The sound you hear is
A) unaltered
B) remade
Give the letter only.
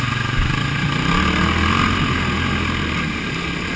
A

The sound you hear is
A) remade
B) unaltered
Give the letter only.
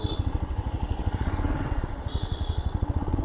A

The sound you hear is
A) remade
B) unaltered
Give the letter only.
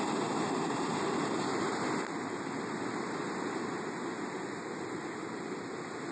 B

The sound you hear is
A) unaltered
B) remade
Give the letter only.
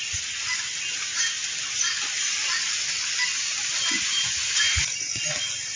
A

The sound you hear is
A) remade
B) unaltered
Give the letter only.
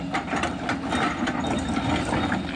B